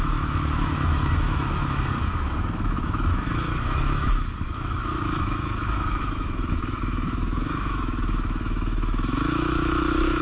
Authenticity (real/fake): fake